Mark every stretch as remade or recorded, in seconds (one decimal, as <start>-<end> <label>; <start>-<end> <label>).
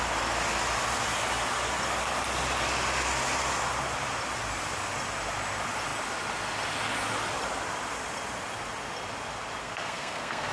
0.0-9.6 recorded; 9.6-10.5 remade